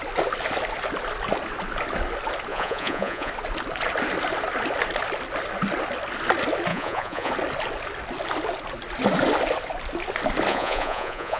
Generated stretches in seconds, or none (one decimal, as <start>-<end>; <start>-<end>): 2.5-3.3; 6.7-7.3; 10.5-11.4